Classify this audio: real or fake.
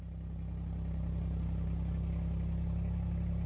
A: real